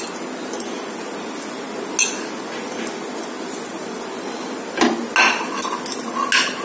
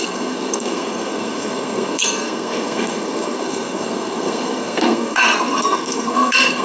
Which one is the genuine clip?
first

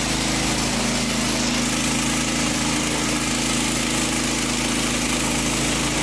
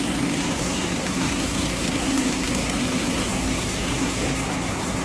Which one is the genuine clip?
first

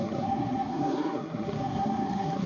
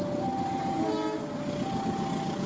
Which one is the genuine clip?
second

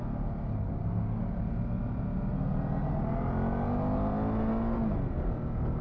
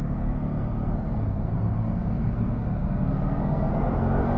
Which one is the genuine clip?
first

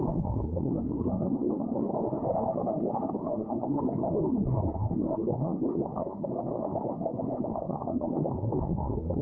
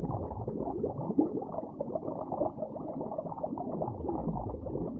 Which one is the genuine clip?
second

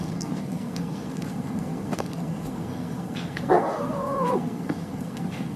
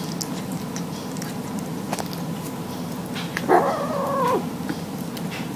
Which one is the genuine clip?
second